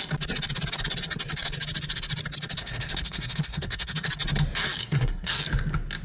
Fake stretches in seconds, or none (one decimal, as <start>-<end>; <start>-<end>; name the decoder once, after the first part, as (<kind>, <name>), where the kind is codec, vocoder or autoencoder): 2.6-4.1 (codec, SNAC); 4.8-5.4